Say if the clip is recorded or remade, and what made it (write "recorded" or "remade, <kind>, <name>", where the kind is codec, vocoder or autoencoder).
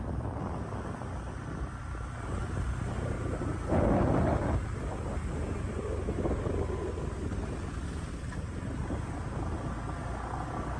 recorded